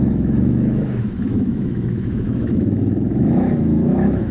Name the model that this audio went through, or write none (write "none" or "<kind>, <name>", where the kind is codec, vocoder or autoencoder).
autoencoder, DAC-VAE